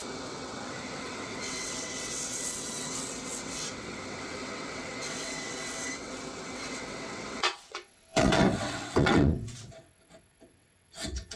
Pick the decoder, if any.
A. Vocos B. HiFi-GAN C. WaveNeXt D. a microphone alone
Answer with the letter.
C